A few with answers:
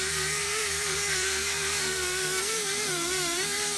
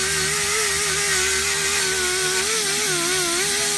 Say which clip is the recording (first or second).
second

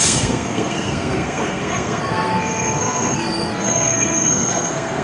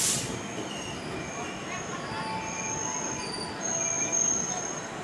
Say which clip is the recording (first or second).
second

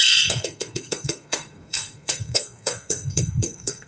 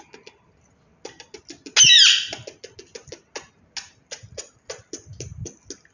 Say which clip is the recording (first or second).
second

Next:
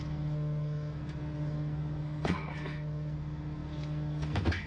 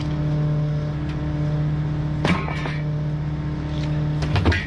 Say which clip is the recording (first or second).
second